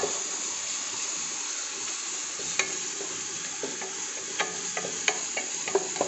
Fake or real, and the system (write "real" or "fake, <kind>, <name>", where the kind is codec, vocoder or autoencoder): real